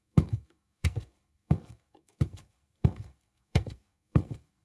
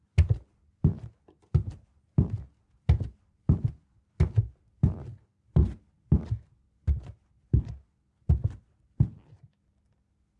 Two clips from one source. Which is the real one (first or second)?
second